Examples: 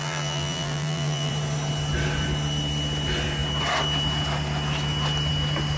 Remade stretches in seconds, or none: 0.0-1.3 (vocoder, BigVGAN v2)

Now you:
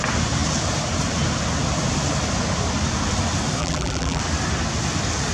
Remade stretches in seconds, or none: 3.6-4.2 (vocoder, BigVGAN v2)

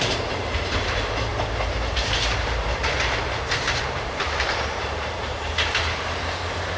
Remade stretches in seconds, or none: 0.0-5.6 (vocoder, BigVGAN v2)

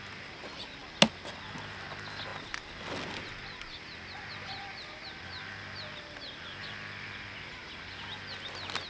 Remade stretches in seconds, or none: none

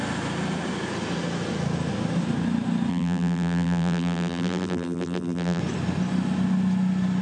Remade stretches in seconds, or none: 2.9-5.6 (vocoder, BigVGAN v2)

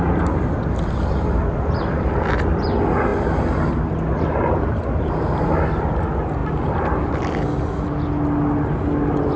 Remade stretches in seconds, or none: none

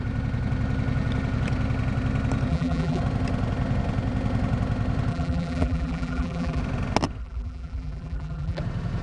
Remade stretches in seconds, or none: 2.5-3.0 (vocoder, BigVGAN v2); 5.1-6.6; 7.2-8.6

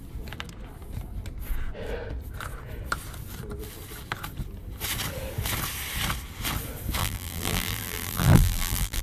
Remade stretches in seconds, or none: 7.0-9.0 (vocoder, BigVGAN v2)